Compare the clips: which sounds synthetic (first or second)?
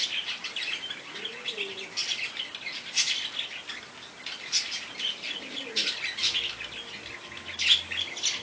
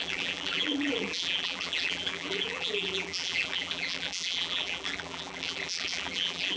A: second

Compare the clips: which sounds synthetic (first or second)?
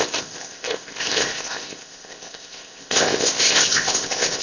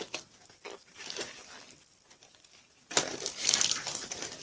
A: first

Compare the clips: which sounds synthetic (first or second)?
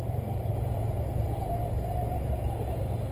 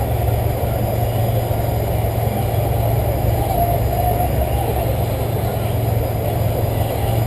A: first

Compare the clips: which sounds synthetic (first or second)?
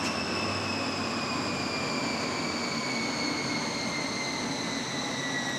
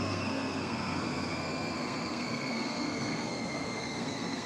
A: second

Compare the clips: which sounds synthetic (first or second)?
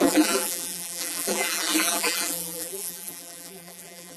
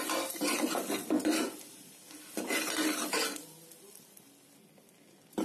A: first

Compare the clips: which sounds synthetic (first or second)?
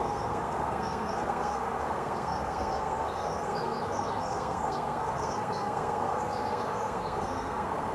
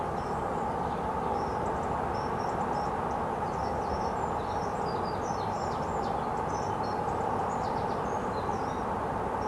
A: first